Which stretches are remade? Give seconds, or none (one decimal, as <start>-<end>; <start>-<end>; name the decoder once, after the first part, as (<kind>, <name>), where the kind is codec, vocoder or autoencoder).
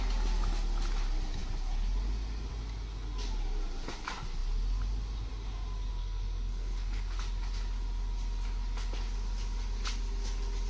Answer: 6.0-7.2 (codec, SNAC)